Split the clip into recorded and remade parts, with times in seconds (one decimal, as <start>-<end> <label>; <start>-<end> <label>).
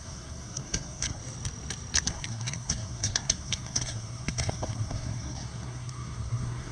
0.0-1.2 remade; 1.2-2.1 recorded; 2.1-6.7 remade